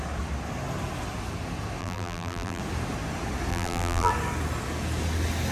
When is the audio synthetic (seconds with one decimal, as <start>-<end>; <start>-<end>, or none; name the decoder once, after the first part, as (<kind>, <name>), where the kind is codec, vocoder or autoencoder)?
1.8-2.6 (vocoder, BigVGAN v2); 3.5-4.1